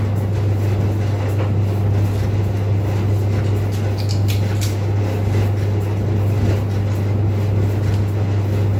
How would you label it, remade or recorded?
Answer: recorded